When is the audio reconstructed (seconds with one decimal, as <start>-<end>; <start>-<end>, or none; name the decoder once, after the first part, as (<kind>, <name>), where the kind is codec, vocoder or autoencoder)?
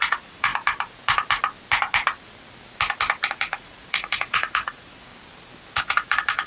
0.0-0.5 (vocoder, Vocos); 3.3-5.1; 5.8-6.5